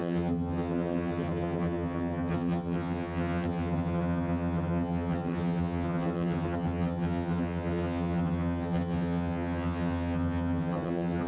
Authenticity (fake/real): fake